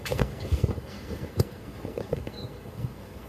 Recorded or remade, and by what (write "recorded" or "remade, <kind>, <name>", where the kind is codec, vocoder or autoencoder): remade, codec, SNAC